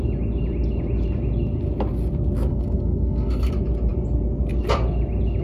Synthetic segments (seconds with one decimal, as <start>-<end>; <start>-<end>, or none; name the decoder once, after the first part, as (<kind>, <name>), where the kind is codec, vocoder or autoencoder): 2.5-3.5 (codec, SNAC)